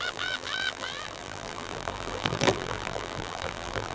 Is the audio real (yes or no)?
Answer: no